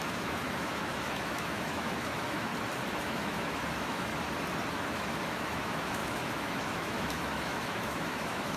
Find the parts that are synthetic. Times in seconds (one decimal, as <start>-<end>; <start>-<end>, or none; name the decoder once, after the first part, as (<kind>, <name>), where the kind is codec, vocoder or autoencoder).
0.0-2.5 (autoencoder, DAC-VAE); 3.0-4.1; 4.7-8.6